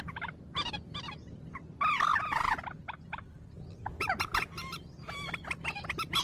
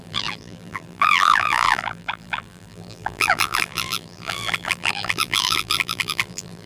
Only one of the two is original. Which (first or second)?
first